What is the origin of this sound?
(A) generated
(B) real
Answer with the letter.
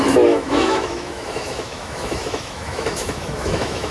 A